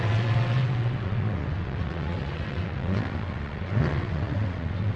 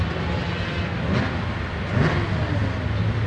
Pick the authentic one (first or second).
second